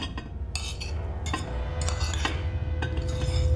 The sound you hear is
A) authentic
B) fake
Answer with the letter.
A